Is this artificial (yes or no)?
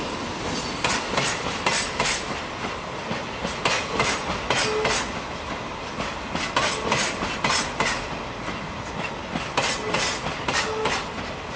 no